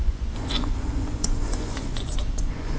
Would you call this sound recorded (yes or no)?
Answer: no